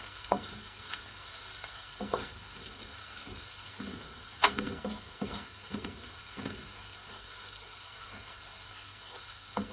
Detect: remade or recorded remade